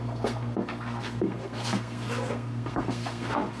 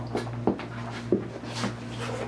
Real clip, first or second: second